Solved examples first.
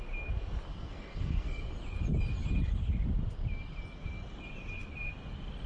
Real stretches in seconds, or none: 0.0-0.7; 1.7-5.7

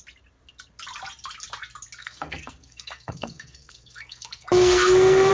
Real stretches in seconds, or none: 0.0-2.0

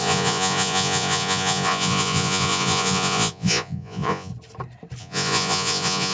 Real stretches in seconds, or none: 4.3-5.0

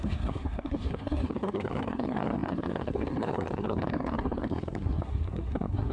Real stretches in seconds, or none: none

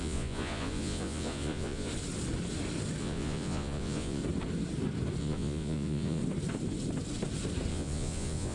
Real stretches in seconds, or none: 1.9-3.0; 4.2-5.2; 6.2-7.7